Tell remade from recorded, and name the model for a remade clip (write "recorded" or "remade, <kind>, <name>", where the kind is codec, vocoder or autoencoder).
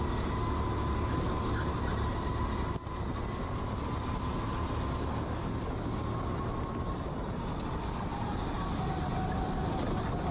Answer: recorded